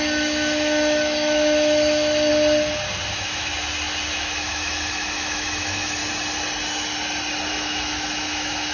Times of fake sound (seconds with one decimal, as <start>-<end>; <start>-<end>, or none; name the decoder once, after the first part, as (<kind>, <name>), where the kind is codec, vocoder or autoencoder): 0.0-2.3 (autoencoder, DAC-VAE); 3.1-3.5; 4.1-6.0; 7.5-8.7

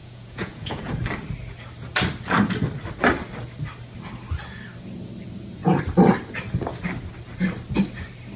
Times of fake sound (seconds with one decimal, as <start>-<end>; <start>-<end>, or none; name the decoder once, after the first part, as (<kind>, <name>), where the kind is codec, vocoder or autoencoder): 0.0-0.9 (vocoder, Vocos)

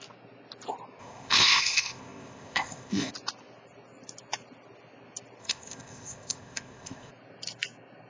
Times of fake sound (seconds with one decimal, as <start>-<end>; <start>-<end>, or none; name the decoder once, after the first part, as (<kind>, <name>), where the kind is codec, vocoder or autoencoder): 1.0-3.1 (codec, ZipCodec); 5.4-7.1

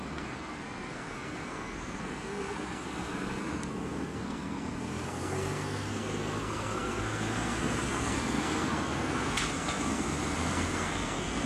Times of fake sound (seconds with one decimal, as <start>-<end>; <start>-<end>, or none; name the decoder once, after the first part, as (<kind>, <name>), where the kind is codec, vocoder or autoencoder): 0.0-11.5 (codec, SNAC)

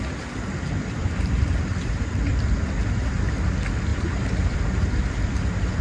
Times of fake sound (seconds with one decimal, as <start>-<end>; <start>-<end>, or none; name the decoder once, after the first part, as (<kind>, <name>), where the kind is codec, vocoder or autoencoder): 1.0-2.3 (vocoder, BigVGAN v2); 3.9-5.3

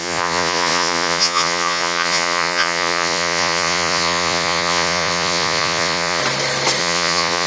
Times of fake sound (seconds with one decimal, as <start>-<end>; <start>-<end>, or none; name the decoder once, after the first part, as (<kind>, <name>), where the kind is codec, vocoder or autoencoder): 0.0-6.2 (vocoder, Vocos); 6.8-7.5

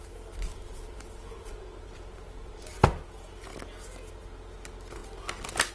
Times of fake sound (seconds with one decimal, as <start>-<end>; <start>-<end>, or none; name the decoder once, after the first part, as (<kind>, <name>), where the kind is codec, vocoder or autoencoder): 0.5-2.8 (vocoder, BigVGAN v2)